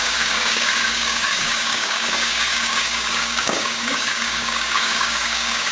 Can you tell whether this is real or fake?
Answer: fake